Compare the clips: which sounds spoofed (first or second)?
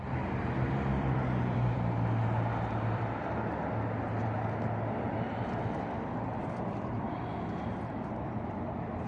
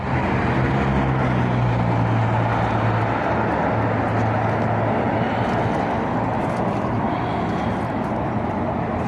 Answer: first